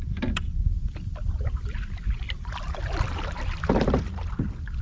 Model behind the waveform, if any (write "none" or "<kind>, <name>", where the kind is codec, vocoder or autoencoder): none